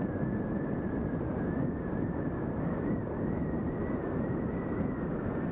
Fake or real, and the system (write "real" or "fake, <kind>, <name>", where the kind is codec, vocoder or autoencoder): real